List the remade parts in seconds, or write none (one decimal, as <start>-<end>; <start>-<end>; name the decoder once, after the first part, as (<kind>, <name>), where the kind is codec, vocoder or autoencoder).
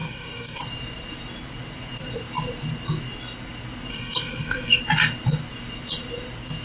0.0-0.6 (codec, SNAC); 3.9-4.8